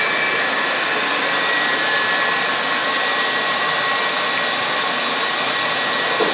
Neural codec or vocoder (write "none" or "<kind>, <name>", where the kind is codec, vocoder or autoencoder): none